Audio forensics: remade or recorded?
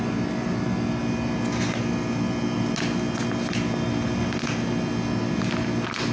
recorded